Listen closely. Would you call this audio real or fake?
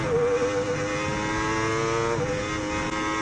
real